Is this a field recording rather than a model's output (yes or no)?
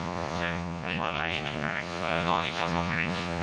no